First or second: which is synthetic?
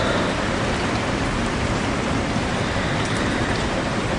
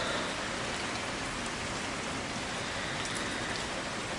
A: first